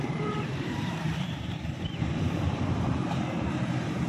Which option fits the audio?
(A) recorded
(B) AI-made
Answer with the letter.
B